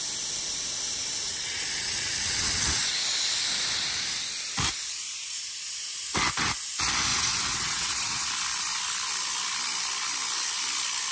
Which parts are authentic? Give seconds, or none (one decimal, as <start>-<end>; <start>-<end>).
0.0-1.2; 2.9-7.1; 8.3-11.1